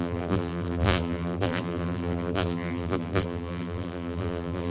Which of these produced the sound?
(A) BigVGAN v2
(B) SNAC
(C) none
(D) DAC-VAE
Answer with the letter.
A